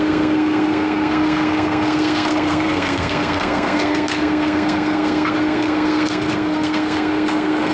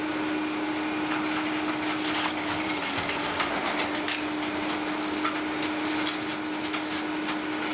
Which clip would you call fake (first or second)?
first